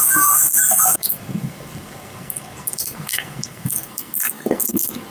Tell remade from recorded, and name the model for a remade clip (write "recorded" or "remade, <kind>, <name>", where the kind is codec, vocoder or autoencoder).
remade, codec, SNAC